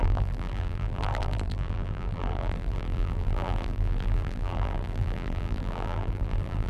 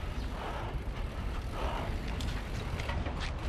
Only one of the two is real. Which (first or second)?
second